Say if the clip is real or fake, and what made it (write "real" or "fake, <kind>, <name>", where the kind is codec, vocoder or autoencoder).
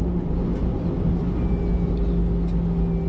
real